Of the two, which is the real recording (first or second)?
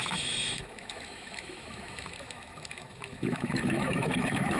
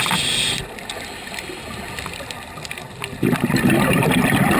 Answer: second